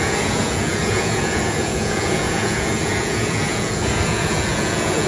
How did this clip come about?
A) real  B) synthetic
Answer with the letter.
B